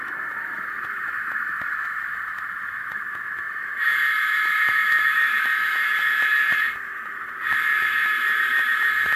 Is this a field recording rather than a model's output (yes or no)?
no